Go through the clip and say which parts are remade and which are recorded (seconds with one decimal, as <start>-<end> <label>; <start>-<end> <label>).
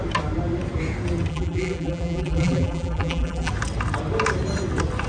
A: 0.0-1.3 recorded; 1.3-3.5 remade; 3.5-5.1 recorded